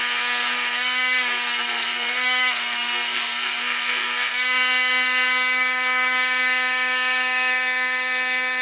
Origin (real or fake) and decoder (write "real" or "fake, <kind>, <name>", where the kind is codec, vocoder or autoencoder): fake, codec, SNAC